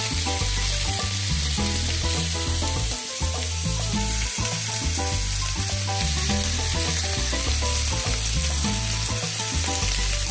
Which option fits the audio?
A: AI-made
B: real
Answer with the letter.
B